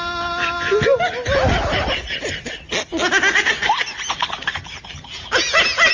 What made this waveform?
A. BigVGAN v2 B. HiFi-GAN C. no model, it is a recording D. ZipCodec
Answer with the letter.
C